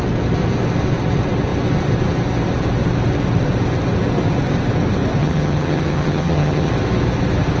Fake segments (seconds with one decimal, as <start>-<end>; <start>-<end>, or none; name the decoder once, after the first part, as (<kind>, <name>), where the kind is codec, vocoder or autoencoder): 5.2-6.7 (vocoder, HiFi-GAN)